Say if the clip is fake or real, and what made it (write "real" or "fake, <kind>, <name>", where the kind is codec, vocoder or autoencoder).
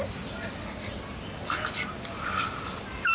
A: real